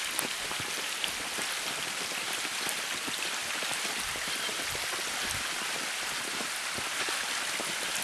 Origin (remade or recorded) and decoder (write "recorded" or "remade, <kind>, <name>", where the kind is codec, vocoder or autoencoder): recorded